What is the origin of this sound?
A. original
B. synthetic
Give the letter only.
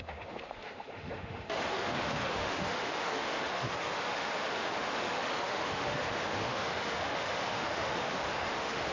B